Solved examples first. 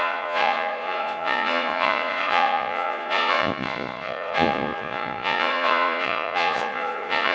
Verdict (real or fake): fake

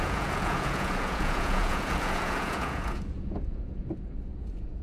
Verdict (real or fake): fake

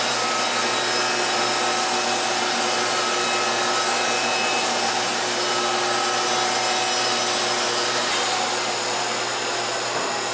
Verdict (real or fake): real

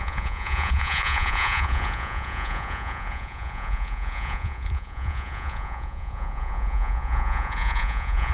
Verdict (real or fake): fake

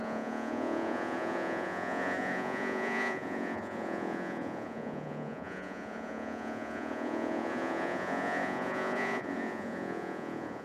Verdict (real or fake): fake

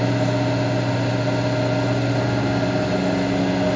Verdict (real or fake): real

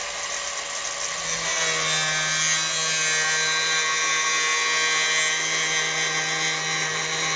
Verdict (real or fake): real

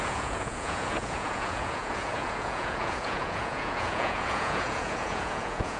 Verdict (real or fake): fake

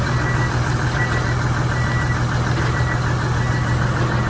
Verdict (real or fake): real